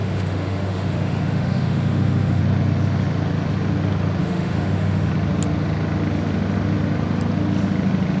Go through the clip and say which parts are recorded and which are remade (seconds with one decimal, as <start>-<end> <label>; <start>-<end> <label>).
0.0-2.4 remade; 2.4-4.2 recorded; 4.2-5.1 remade; 5.1-8.2 recorded